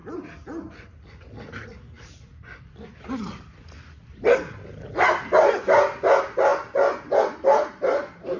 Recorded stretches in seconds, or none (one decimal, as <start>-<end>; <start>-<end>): 0.0-8.4